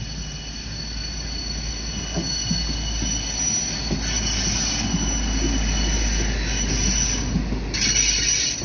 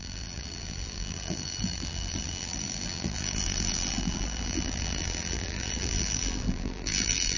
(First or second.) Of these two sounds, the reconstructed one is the second